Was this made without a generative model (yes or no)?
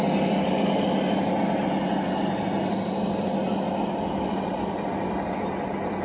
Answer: yes